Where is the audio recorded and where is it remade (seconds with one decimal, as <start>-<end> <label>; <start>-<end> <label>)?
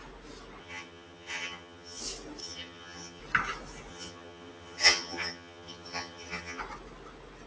0.0-0.6 recorded; 0.6-2.0 remade; 2.0-2.4 recorded; 2.4-3.2 remade; 3.2-3.9 recorded; 3.9-6.6 remade; 6.6-7.5 recorded